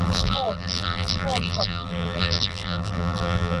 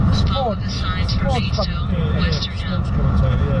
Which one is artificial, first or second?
first